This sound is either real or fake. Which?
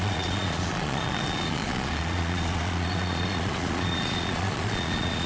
fake